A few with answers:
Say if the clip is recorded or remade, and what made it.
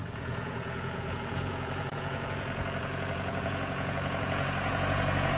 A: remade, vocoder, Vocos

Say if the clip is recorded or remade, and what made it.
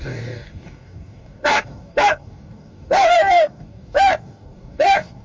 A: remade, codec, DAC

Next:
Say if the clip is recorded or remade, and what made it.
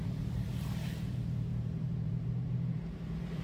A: remade, vocoder, BigVGAN v2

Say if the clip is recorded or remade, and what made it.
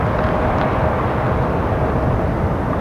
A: recorded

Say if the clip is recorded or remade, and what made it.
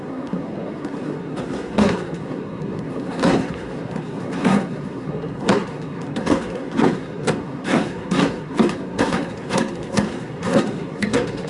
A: remade, codec, SNAC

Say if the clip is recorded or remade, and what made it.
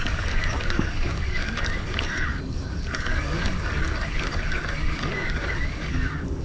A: remade, codec, DAC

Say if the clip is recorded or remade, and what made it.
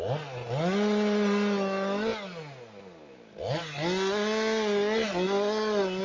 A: recorded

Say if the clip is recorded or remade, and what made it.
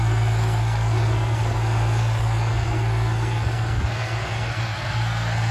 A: remade, codec, SNAC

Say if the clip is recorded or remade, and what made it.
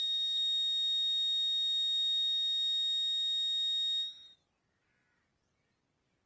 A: recorded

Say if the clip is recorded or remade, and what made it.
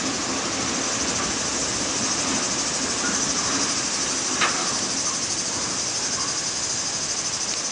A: recorded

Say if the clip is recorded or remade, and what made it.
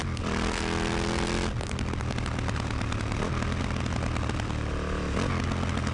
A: recorded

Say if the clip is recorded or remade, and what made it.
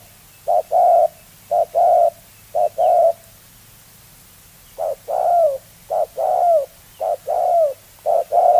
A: recorded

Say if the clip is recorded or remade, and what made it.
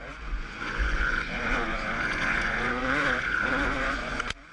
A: remade, vocoder, Vocos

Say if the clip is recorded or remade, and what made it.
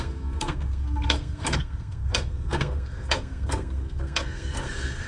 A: remade, codec, SNAC